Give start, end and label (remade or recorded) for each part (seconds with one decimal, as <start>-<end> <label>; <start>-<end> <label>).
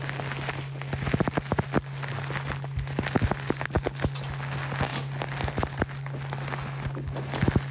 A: 0.0-7.7 recorded